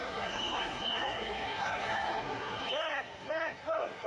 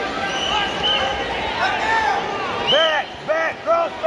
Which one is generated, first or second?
first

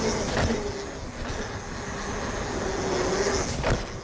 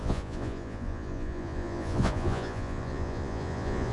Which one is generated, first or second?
second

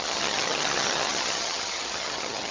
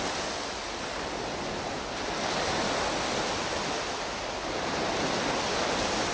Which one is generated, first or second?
first